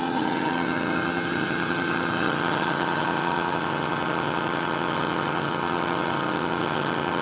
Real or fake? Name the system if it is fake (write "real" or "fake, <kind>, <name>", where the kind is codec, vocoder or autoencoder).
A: fake, vocoder, HiFi-GAN